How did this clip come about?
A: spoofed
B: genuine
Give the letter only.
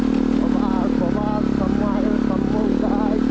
B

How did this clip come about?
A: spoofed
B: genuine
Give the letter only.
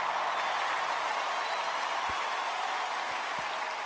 A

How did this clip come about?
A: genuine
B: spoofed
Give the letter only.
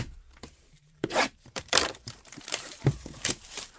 B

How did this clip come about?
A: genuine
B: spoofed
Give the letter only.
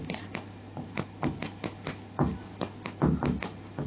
A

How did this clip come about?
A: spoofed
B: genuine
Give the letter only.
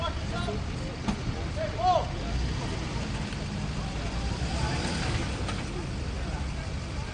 B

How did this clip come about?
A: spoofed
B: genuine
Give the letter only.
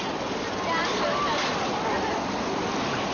B